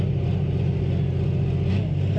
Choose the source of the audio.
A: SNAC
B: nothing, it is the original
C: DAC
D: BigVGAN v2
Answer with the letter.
B